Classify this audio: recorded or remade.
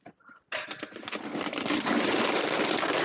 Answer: recorded